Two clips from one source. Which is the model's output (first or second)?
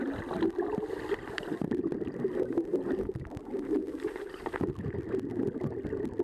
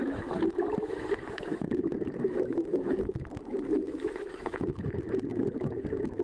second